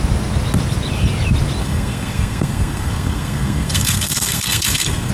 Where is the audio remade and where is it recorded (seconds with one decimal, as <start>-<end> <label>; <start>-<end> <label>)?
0.0-1.6 recorded; 1.6-5.1 remade